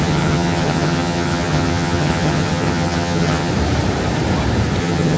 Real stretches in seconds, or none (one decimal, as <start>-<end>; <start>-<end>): 3.5-4.8